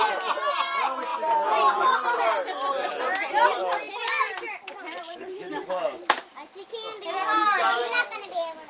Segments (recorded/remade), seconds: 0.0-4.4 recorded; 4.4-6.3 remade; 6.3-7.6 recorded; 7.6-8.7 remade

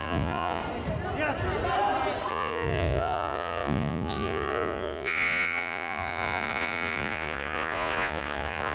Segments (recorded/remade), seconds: 0.0-0.6 remade; 0.6-2.3 recorded; 2.3-8.7 remade

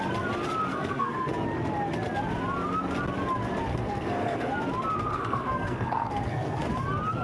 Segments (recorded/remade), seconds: 0.0-0.7 recorded; 0.7-1.3 remade; 1.3-3.7 recorded; 3.7-4.5 remade; 4.5-5.1 recorded; 5.1-6.6 remade; 6.6-7.2 recorded

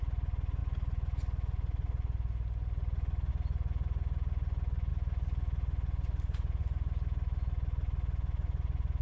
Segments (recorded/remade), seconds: 0.0-9.0 recorded

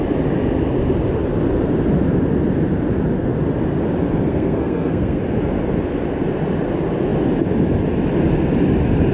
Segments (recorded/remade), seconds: 0.0-4.3 recorded; 4.3-5.2 remade; 5.2-9.1 recorded